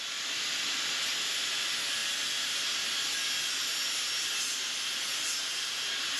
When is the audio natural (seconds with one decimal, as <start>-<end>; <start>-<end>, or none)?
0.0-6.2